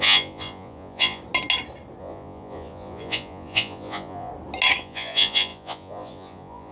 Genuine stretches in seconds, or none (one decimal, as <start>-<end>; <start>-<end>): 1.2-2.0; 4.3-4.8